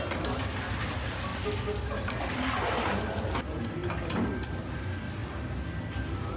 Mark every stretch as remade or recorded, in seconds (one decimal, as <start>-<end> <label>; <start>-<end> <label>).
0.0-6.4 recorded